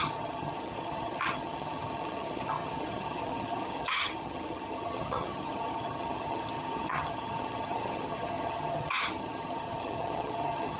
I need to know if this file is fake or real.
fake